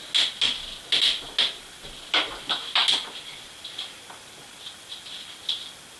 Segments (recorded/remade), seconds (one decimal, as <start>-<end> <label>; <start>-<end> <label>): 0.0-6.0 recorded

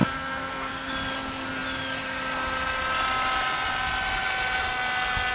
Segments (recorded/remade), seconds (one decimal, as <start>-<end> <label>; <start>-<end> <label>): 0.0-0.9 remade; 0.9-5.3 recorded